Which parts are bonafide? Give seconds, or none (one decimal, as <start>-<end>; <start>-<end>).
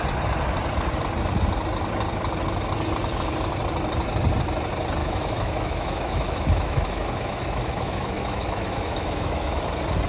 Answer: 0.0-5.0; 9.6-10.1